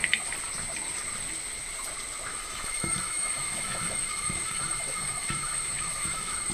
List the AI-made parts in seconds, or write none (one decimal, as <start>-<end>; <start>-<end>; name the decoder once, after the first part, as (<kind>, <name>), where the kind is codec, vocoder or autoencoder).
2.3-6.5 (autoencoder, DAC-VAE)